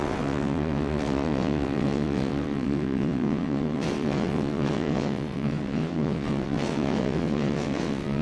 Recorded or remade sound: remade